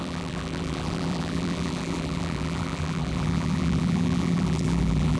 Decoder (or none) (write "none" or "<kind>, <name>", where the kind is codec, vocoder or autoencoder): vocoder, BigVGAN v2